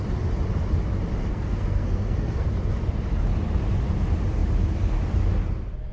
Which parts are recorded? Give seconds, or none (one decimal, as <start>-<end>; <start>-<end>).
0.0-1.3; 2.5-5.9